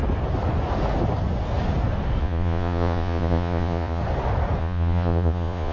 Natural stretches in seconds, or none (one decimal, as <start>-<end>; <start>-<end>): 0.0-2.2; 4.0-4.6